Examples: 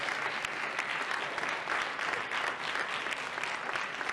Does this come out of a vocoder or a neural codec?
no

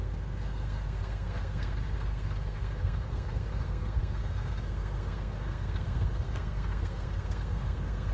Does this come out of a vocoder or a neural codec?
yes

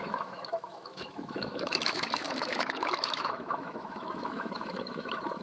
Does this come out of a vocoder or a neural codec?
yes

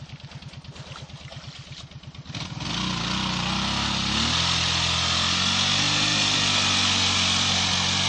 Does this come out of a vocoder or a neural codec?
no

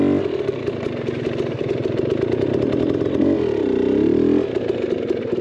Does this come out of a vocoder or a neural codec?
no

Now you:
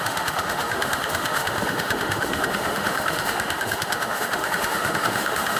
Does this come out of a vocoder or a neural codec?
yes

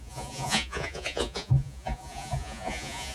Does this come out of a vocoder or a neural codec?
yes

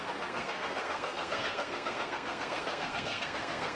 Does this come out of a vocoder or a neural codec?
yes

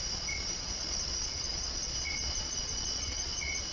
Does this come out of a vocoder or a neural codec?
yes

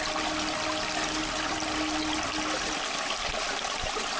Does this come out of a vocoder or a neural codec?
no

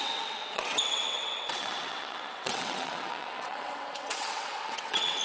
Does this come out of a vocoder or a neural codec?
yes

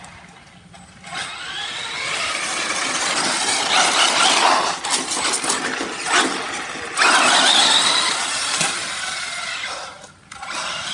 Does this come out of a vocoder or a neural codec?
no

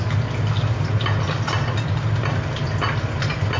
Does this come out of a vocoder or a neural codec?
no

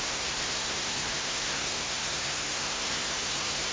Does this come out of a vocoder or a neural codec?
yes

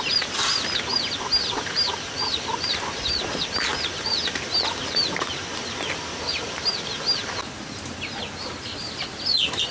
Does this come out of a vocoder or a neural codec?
no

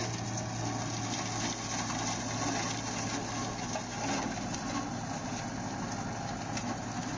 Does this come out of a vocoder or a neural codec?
no